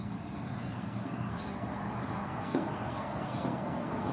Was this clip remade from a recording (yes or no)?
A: yes